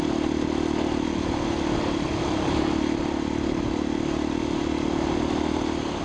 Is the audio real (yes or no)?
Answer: yes